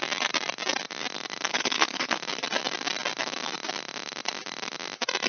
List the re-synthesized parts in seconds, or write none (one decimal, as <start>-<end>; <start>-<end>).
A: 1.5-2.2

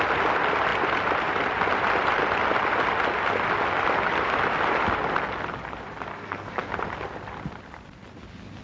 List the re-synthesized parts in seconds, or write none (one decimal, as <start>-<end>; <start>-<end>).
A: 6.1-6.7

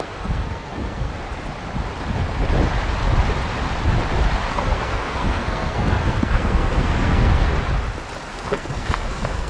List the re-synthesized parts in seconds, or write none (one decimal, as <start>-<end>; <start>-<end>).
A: 0.0-1.1; 4.5-7.5; 8.3-9.5

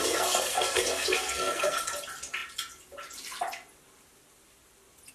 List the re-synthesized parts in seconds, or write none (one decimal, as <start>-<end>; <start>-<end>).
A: 0.0-1.9

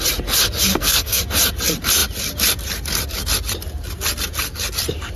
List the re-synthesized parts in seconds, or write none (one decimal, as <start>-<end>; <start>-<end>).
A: 0.7-1.2

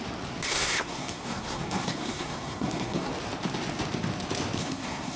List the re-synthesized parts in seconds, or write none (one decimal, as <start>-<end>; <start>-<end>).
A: 0.5-3.1; 4.6-5.2